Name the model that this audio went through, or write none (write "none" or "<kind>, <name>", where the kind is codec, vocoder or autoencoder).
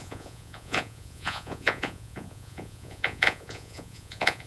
vocoder, Vocos